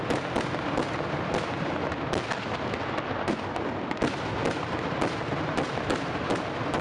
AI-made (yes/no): no